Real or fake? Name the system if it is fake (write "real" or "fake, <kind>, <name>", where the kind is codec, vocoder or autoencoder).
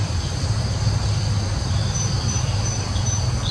real